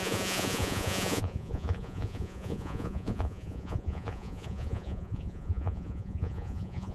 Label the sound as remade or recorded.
remade